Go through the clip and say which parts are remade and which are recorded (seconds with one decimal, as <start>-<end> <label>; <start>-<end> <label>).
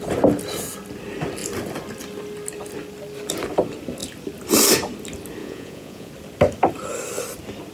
0.0-5.4 recorded; 5.4-6.1 remade; 6.1-7.7 recorded